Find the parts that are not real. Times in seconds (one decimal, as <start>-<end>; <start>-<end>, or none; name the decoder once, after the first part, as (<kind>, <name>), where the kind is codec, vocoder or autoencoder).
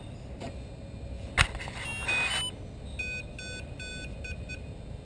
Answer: none